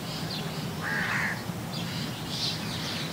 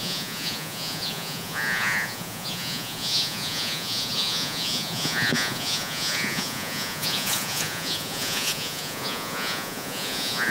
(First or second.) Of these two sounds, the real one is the first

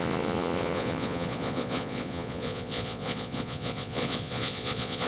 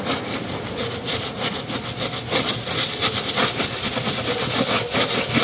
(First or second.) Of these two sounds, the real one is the second